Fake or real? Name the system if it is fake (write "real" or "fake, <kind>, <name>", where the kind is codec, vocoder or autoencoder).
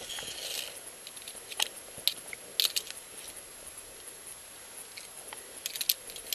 real